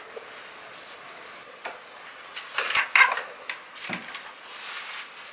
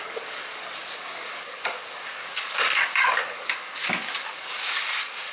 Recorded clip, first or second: first